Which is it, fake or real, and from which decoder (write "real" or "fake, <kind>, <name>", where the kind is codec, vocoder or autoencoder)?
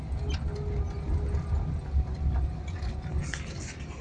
real